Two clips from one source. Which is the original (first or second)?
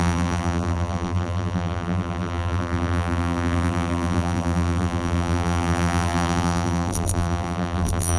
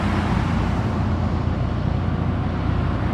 second